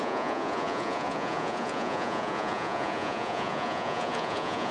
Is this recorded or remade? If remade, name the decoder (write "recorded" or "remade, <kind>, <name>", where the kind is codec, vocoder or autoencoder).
remade, vocoder, Vocos